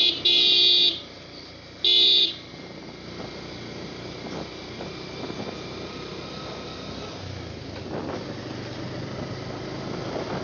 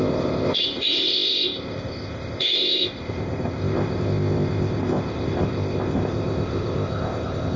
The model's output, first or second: second